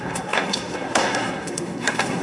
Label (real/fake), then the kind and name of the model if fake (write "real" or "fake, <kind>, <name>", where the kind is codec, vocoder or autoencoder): fake, codec, SNAC